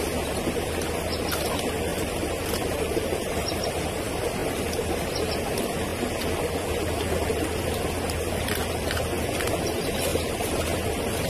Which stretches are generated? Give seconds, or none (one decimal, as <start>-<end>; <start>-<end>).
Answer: 1.9-3.7